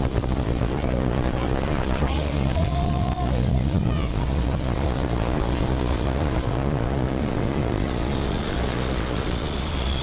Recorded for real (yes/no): no